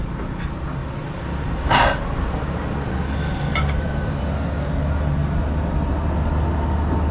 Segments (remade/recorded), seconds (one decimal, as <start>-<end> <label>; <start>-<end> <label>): 0.0-0.8 recorded; 0.8-2.4 remade; 2.4-3.5 recorded; 3.5-4.2 remade; 4.2-7.1 recorded